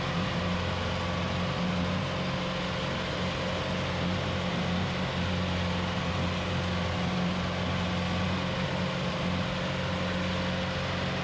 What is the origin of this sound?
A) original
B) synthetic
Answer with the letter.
A